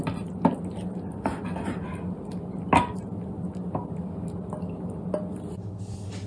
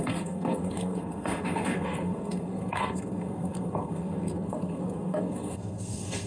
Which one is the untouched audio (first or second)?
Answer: first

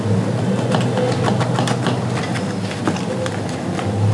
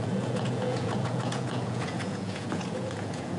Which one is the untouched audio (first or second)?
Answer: first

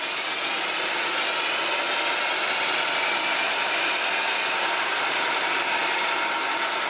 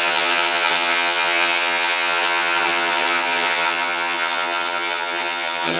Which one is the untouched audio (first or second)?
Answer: first